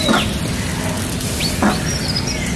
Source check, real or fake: real